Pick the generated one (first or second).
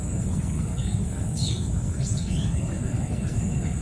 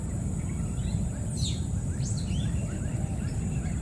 first